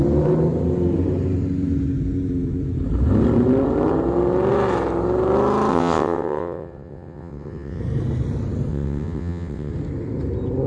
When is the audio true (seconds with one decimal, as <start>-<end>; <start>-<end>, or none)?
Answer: 0.0-5.7; 7.8-8.7; 9.7-10.7